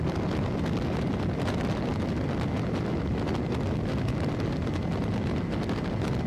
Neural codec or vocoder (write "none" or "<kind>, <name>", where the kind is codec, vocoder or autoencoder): none